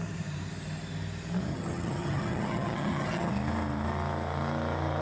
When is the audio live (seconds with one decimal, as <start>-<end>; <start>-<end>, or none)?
0.0-1.5; 3.3-5.0